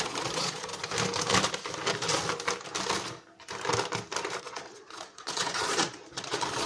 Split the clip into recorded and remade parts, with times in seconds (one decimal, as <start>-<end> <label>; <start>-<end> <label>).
0.0-0.7 remade; 0.7-4.4 recorded; 4.4-6.7 remade